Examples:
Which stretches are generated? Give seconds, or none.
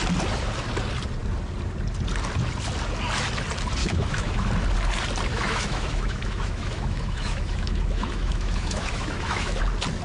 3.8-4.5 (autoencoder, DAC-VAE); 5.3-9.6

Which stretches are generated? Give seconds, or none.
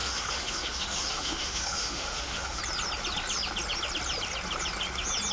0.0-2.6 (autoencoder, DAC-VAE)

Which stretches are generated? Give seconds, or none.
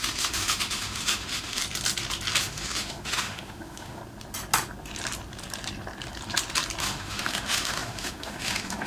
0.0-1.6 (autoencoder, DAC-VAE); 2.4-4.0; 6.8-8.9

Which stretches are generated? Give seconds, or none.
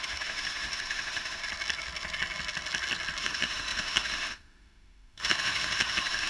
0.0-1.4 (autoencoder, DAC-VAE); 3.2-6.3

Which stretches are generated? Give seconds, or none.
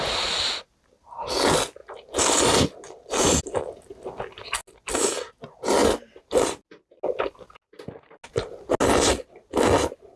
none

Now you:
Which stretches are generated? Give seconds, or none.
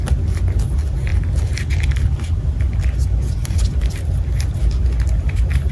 none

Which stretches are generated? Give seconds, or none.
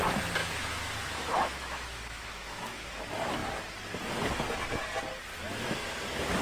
0.4-3.0 (autoencoder, DAC-VAE); 5.3-5.8